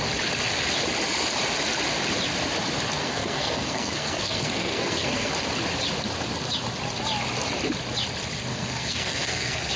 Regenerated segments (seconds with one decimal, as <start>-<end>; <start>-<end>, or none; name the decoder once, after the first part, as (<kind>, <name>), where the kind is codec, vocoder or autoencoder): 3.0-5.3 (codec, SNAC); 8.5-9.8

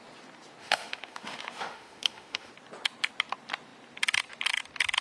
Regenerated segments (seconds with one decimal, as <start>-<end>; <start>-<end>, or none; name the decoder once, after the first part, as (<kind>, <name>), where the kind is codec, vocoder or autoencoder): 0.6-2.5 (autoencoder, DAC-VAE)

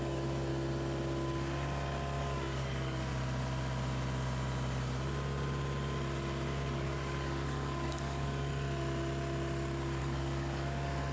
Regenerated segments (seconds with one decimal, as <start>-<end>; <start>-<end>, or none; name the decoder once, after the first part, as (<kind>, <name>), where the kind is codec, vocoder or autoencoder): 0.0-0.5 (codec, DAC); 2.2-3.1; 6.7-8.5; 10.0-11.1

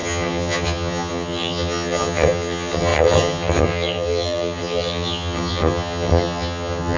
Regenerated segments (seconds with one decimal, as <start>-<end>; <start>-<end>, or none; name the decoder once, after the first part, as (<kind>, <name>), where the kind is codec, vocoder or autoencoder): 0.0-7.0 (vocoder, HiFi-GAN)

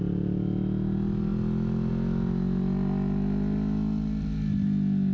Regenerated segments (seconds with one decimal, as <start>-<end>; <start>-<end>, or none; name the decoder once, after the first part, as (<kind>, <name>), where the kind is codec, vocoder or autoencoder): none

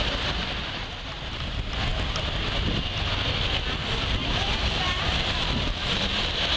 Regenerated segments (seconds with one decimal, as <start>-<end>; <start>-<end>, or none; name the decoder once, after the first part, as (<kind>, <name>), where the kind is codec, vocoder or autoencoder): 0.4-1.5 (vocoder, BigVGAN v2); 4.2-6.6